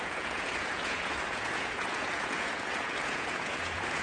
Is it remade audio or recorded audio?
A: remade